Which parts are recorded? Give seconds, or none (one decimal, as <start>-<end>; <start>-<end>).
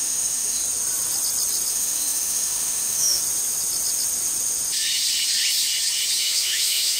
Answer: 0.6-1.7; 3.2-6.2